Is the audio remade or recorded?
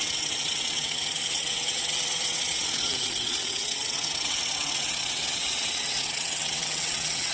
remade